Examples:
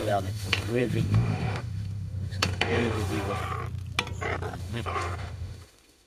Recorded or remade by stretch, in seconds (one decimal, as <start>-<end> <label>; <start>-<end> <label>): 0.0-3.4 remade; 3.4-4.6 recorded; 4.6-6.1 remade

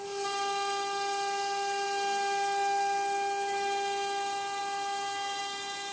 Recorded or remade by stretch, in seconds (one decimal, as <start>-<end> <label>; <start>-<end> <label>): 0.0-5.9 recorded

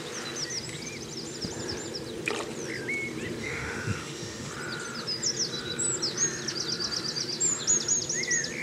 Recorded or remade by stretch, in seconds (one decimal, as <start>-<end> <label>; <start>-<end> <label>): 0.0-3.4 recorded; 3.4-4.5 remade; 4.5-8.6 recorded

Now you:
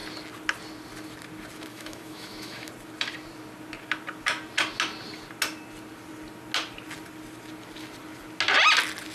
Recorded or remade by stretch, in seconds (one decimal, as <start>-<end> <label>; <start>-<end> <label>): 0.0-1.7 recorded; 1.7-2.7 remade; 2.7-9.1 recorded

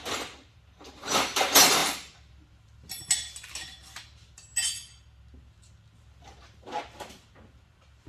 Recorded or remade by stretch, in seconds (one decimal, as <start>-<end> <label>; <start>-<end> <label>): 0.0-8.1 recorded

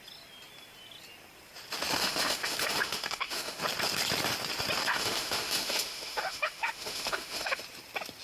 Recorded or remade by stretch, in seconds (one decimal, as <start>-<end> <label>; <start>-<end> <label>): 0.0-2.0 recorded; 2.0-3.6 remade; 3.6-4.8 recorded; 4.8-7.6 remade; 7.6-8.2 recorded

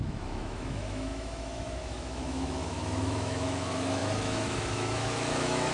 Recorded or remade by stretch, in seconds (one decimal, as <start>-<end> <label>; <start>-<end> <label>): 0.0-5.7 remade